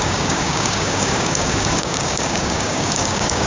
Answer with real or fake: fake